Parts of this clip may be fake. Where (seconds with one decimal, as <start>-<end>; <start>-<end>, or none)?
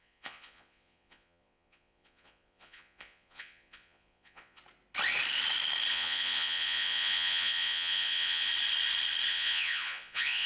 0.0-4.6; 5.9-8.5; 9.3-10.5